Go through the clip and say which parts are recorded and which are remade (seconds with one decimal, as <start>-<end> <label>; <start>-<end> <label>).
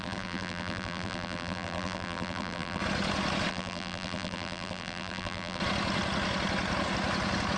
0.0-2.8 remade; 2.8-3.5 recorded; 3.5-5.6 remade; 5.6-7.6 recorded